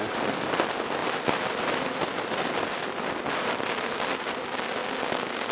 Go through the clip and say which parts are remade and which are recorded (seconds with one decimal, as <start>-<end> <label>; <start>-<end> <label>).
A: 0.0-5.5 recorded